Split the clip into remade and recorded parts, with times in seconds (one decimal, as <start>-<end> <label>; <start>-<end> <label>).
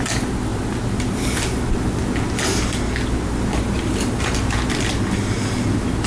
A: 0.0-6.1 recorded